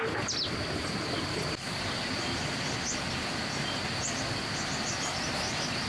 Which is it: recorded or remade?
recorded